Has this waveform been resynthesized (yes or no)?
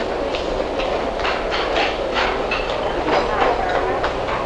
no